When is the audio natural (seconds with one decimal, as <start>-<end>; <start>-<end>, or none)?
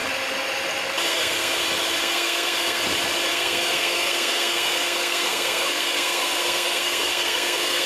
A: 0.0-1.1; 1.6-2.0; 2.8-3.3